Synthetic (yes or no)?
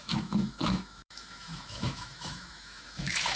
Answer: yes